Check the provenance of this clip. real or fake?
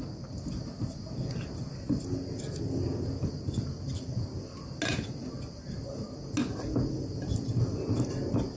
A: real